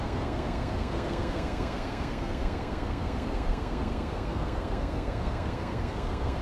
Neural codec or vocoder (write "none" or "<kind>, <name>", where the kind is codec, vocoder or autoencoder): codec, SNAC